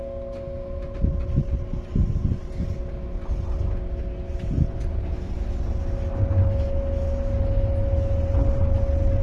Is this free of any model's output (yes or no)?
yes